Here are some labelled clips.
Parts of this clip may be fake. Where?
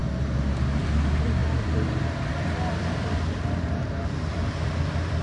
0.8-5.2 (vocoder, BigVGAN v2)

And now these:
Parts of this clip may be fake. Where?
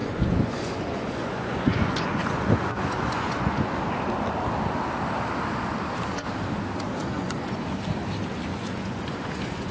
0.0-3.8 (vocoder, Vocos); 7.0-7.6; 8.5-9.7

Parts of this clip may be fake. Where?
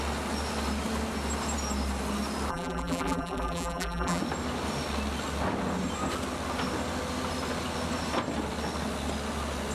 2.5-4.2 (vocoder, BigVGAN v2)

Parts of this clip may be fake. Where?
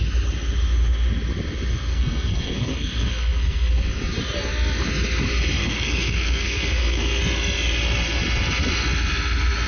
1.9-3.7 (codec, SNAC); 5.6-7.2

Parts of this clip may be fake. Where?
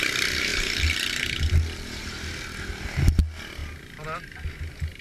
0.5-2.1 (vocoder, BigVGAN v2)